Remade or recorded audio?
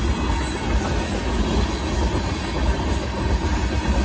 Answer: recorded